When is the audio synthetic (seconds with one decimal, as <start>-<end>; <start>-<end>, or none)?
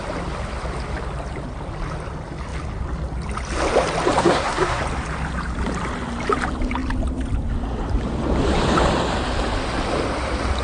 4.2-4.8